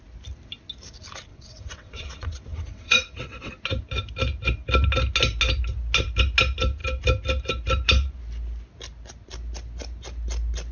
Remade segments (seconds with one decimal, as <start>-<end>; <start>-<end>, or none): 1.3-3.5

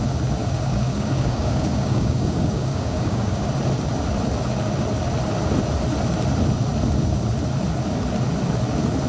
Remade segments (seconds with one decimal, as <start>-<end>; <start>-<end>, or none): 0.4-3.5

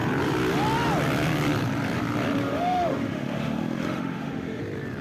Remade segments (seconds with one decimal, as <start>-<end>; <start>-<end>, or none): 2.4-4.6

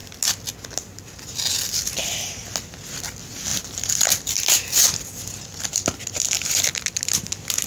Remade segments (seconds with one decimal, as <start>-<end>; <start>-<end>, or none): 3.5-4.1; 4.8-5.7

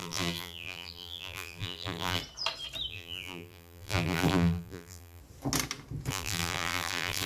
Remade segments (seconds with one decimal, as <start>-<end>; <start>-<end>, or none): 0.0-2.2; 2.9-5.2; 6.1-7.3

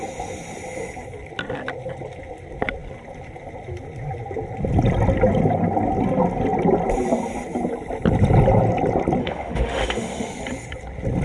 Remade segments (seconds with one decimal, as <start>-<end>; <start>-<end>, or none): 9.2-10.4

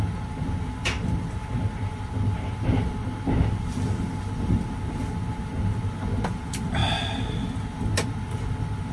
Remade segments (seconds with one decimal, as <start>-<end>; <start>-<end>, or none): none

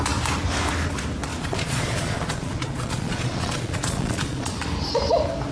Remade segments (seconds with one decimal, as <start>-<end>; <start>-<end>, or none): 1.3-4.5